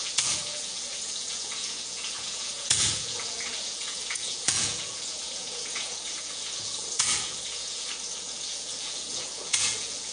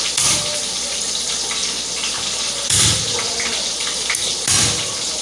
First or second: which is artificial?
first